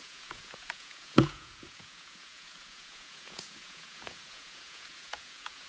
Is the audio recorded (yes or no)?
no